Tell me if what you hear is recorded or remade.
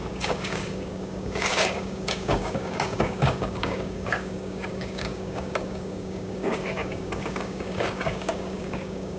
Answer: remade